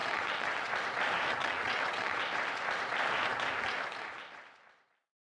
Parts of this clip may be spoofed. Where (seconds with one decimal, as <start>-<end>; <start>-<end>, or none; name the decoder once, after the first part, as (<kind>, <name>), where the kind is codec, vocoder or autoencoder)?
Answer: 0.0-0.7 (vocoder, WaveNeXt); 1.4-2.2